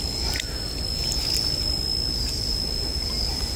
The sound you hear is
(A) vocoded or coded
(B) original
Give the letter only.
B